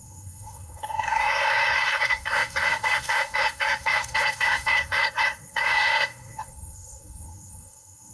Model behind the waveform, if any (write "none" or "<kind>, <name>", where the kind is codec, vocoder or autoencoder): codec, SNAC